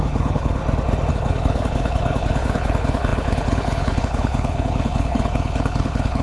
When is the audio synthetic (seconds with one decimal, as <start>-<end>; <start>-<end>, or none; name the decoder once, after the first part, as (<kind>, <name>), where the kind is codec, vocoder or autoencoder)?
0.0-0.6 (codec, HILCodec); 1.1-6.2